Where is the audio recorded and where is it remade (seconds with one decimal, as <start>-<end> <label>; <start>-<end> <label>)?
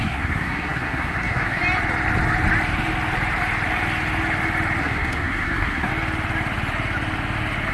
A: 0.0-1.6 remade; 1.6-4.8 recorded; 4.8-5.9 remade; 5.9-7.7 recorded